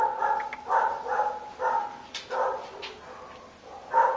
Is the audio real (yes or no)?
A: yes